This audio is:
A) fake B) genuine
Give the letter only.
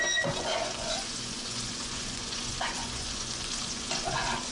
A